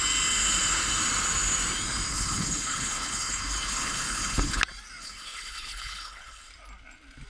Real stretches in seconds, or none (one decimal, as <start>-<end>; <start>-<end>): 0.0-2.1; 4.6-5.0; 6.5-7.3